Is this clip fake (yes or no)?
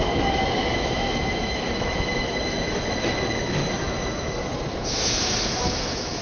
yes